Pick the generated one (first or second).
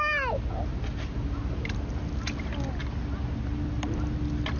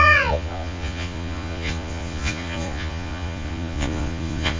second